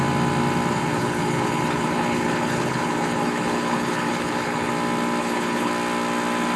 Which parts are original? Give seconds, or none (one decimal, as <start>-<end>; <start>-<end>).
0.0-0.7; 4.7-5.2; 5.7-6.6